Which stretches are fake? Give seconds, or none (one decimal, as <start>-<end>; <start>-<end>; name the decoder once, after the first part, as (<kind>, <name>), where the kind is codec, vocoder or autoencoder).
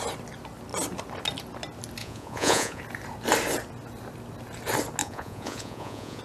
2.0-2.8 (vocoder, Vocos); 5.0-6.2